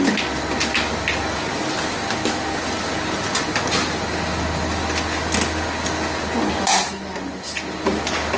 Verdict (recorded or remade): recorded